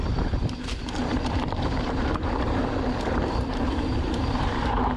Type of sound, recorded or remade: remade